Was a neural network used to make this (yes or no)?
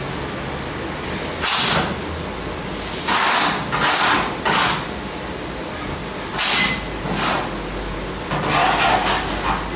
no